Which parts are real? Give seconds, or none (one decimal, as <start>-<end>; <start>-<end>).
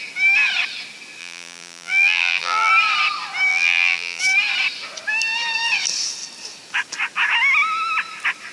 0.0-1.2; 2.7-3.5; 4.2-8.5